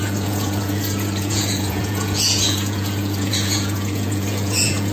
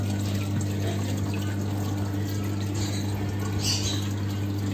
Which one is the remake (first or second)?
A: first